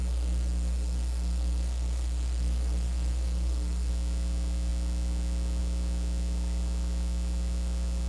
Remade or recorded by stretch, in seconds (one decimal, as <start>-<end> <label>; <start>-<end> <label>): 0.0-3.9 remade; 3.9-8.1 recorded